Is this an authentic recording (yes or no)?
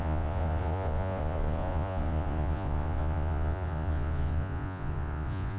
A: no